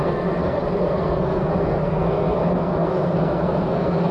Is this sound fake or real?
fake